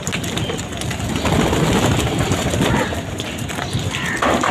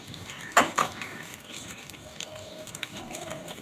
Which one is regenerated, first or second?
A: second